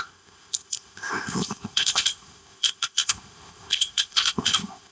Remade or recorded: remade